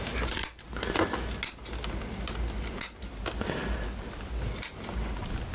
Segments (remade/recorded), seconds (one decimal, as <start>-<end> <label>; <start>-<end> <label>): 0.0-5.5 recorded